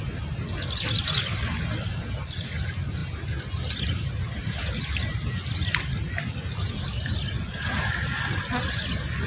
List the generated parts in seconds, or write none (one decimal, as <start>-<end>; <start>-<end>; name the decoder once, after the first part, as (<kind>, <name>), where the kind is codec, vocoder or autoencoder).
none